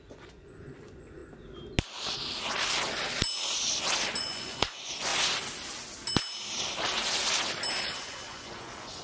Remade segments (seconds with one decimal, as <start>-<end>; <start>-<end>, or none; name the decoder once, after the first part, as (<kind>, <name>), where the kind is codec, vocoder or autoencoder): 0.0-1.2 (vocoder, Vocos); 4.2-5.1; 8.0-9.0